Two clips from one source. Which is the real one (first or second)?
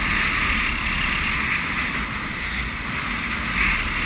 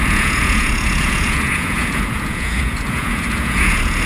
first